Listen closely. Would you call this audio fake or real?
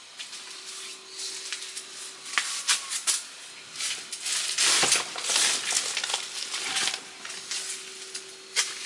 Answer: real